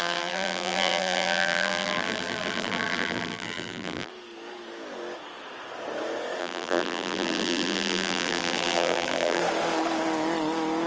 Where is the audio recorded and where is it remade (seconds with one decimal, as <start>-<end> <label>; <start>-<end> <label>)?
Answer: 0.0-4.1 remade; 4.1-6.4 recorded; 6.4-9.4 remade; 9.4-10.9 recorded